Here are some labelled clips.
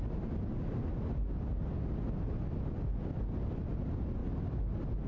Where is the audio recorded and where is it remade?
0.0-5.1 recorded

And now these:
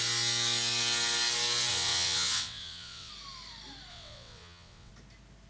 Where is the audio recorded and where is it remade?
0.0-1.7 recorded; 1.7-3.1 remade; 3.1-3.9 recorded; 3.9-4.9 remade; 4.9-5.5 recorded

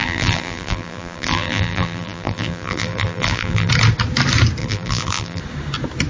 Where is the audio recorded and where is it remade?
0.0-3.7 remade; 3.7-4.6 recorded; 4.6-5.4 remade; 5.4-6.1 recorded

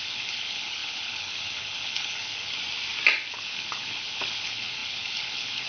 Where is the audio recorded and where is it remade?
0.0-2.6 remade; 2.6-3.3 recorded; 3.3-5.7 remade

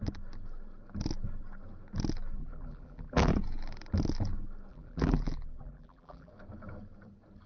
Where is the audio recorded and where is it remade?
0.0-2.4 recorded; 2.4-3.3 remade; 3.3-4.7 recorded; 4.7-6.3 remade; 6.3-7.5 recorded

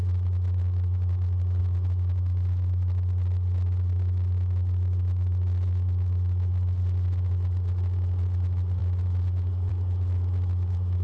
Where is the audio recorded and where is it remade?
0.0-11.0 recorded

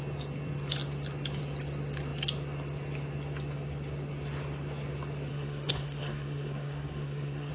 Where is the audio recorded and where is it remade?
0.0-5.3 recorded; 5.3-7.5 remade